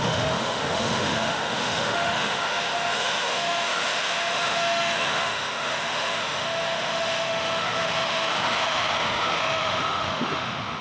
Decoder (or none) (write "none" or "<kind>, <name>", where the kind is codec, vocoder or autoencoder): autoencoder, DAC-VAE